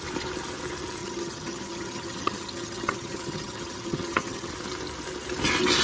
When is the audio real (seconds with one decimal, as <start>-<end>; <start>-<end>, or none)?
0.0-1.0; 4.5-5.8